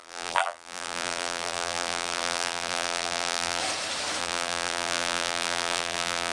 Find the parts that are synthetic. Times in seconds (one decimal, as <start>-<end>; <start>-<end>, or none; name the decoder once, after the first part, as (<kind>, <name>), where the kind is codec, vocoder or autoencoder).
0.0-3.6 (vocoder, BigVGAN v2); 4.2-6.3